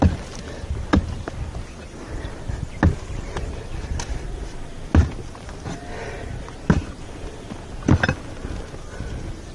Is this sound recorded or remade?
recorded